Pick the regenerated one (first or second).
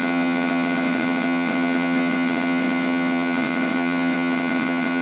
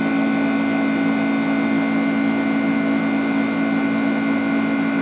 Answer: first